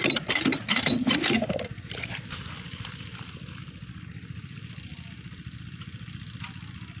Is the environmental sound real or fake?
real